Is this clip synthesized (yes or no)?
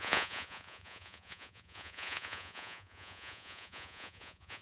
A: yes